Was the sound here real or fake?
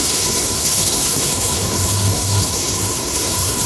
fake